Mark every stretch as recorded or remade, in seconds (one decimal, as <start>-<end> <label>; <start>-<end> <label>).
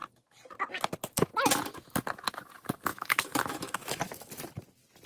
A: 0.0-2.9 recorded; 2.9-4.3 remade; 4.3-5.1 recorded